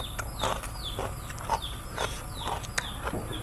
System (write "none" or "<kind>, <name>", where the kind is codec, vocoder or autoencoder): none